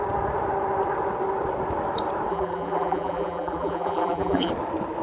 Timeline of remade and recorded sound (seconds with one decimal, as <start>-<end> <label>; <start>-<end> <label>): 0.0-2.3 recorded; 2.3-4.5 remade; 4.5-5.0 recorded